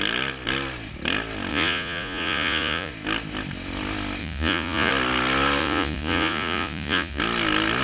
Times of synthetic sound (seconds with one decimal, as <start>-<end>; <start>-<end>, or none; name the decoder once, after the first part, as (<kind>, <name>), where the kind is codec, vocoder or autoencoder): 1.5-2.9 (vocoder, Vocos); 4.2-4.9; 5.6-7.2